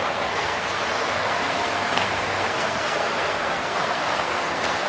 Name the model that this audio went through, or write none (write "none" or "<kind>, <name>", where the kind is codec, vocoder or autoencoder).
codec, SNAC